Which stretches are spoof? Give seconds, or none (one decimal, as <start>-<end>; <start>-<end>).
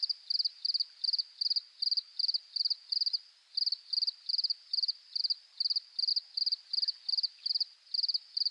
none